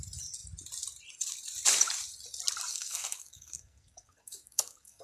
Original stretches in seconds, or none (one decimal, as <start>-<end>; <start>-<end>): 0.0-2.7